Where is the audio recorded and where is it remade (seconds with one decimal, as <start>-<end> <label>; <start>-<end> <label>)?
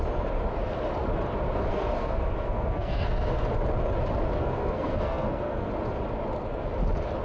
0.0-1.7 recorded; 1.7-3.4 remade; 3.4-4.4 recorded; 4.4-5.7 remade; 5.7-7.2 recorded